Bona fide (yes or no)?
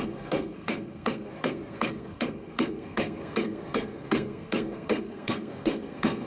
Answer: no